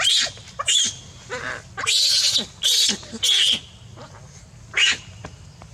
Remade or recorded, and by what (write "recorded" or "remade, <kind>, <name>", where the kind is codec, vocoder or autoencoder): recorded